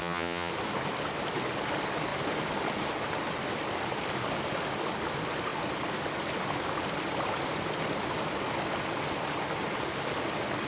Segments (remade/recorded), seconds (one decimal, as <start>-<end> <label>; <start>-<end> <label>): 0.0-0.5 remade; 0.5-10.7 recorded